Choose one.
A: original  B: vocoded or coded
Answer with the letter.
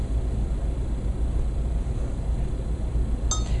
A